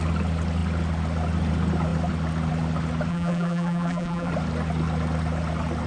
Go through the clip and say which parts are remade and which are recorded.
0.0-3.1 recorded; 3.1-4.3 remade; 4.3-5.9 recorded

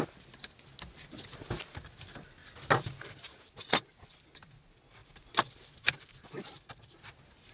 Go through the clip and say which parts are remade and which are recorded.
0.0-7.5 recorded

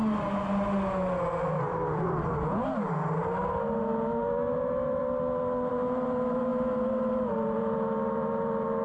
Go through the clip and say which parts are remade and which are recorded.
0.0-1.5 recorded; 1.5-5.0 remade; 5.0-5.7 recorded; 5.7-8.8 remade

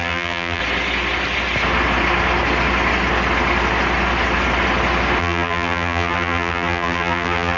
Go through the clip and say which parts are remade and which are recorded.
0.0-0.6 remade; 0.6-5.2 recorded; 5.2-7.6 remade